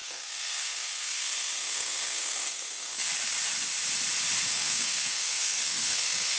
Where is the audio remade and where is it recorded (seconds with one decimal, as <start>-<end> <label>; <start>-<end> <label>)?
0.0-3.1 remade; 3.1-4.5 recorded; 4.5-6.4 remade

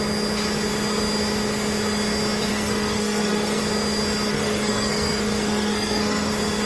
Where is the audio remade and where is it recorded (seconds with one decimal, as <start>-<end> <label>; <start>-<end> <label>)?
0.0-2.5 recorded; 2.5-3.6 remade; 3.6-4.3 recorded; 4.3-6.3 remade; 6.3-6.7 recorded

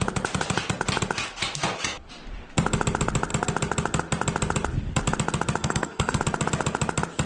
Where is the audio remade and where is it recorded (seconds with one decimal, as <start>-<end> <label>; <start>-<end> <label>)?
0.0-5.6 recorded; 5.6-6.2 remade; 6.2-7.3 recorded